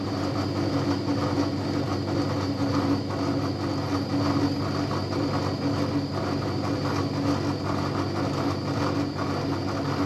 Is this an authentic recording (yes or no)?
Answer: yes